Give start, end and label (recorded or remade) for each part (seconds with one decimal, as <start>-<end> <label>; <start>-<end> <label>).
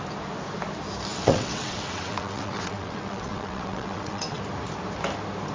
0.0-1.1 recorded; 1.1-4.4 remade; 4.4-5.5 recorded